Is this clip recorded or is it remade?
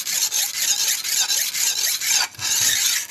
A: recorded